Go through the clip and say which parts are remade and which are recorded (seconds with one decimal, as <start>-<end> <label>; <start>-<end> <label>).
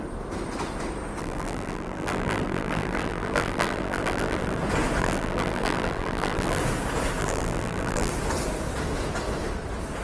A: 0.0-1.2 recorded; 1.2-4.6 remade; 4.6-5.0 recorded; 5.0-6.6 remade; 6.6-7.2 recorded; 7.2-8.1 remade; 8.1-10.0 recorded